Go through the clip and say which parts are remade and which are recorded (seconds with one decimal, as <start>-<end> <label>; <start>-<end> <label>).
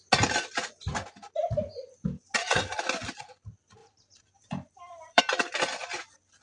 0.0-3.8 recorded; 3.8-5.2 remade; 5.2-6.4 recorded